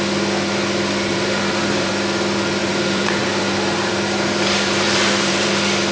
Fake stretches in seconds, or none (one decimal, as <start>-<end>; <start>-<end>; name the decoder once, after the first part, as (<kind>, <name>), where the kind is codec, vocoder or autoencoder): 1.1-1.9 (vocoder, BigVGAN v2); 2.6-5.5